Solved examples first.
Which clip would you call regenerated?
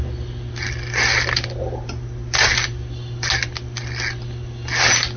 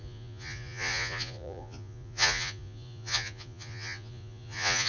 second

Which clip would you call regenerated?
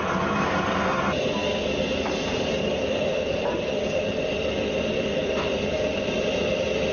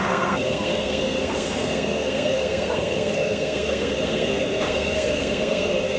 second